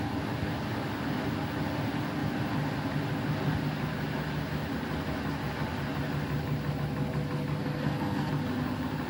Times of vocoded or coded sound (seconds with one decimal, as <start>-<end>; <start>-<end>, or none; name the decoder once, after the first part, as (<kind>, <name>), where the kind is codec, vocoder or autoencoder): 7.6-8.3 (codec, SNAC)